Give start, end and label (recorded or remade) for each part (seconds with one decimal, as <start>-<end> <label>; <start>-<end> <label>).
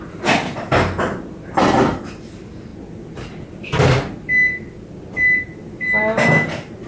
0.0-6.9 recorded